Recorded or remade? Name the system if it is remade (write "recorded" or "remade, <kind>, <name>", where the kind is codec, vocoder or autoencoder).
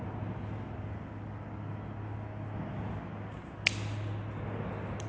recorded